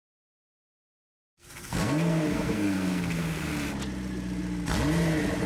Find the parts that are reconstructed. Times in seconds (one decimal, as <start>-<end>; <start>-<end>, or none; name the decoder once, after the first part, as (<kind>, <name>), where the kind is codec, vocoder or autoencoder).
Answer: 0.0-3.5 (codec, SNAC)